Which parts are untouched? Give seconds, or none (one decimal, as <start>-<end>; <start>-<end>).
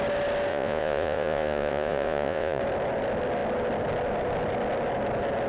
0.0-0.5; 2.6-5.5